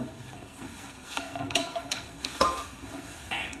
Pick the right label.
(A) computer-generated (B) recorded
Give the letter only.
A